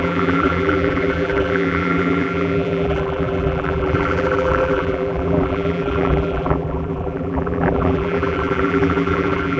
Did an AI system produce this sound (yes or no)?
yes